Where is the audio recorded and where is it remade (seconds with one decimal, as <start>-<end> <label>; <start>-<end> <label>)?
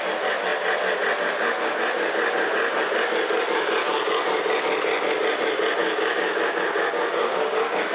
0.0-5.8 recorded; 5.8-7.9 remade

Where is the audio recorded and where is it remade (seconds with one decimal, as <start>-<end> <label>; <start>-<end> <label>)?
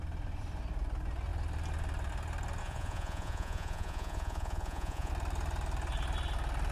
0.0-2.6 recorded; 2.6-5.1 remade; 5.1-6.7 recorded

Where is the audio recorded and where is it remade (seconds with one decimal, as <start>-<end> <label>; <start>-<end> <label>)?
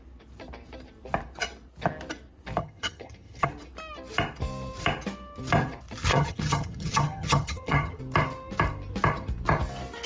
0.0-2.6 recorded; 2.6-3.5 remade; 3.5-6.1 recorded; 6.1-8.0 remade; 8.0-10.1 recorded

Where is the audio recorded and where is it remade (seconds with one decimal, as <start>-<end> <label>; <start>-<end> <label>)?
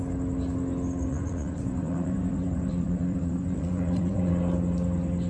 0.0-1.1 recorded; 1.1-4.3 remade; 4.3-5.3 recorded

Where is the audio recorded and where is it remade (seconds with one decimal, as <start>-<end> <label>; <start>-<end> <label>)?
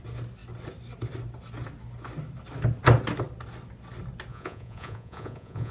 0.0-4.3 recorded; 4.3-5.7 remade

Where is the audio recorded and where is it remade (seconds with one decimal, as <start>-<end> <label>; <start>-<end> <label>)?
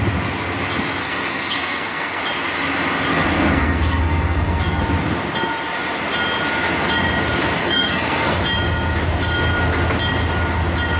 0.0-1.0 recorded; 1.0-2.2 remade; 2.2-3.1 recorded; 3.1-4.8 remade; 4.8-7.6 recorded; 7.6-8.4 remade; 8.4-11.0 recorded